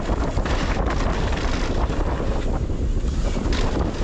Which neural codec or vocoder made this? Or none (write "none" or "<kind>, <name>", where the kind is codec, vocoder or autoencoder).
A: none